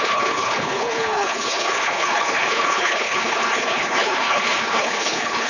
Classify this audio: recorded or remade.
remade